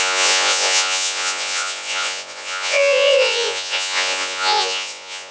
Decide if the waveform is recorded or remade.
remade